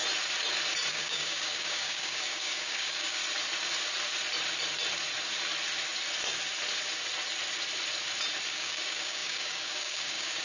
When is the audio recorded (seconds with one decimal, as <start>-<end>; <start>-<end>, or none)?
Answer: 0.0-0.9; 3.2-8.5